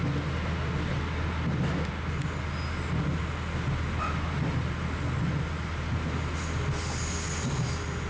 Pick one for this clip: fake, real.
real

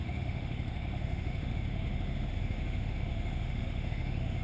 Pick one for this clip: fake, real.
fake